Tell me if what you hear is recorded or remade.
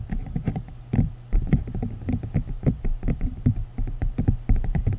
recorded